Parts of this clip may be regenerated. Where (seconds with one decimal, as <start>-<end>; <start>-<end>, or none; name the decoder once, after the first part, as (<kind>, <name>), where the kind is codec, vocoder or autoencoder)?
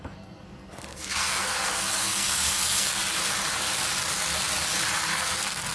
0.0-3.0 (codec, SNAC); 5.1-5.7